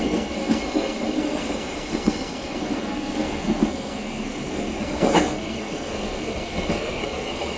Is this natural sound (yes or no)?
no